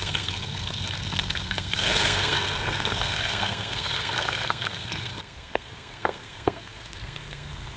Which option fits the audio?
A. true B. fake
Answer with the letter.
B